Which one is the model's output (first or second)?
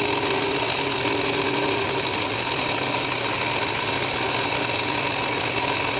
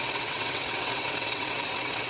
second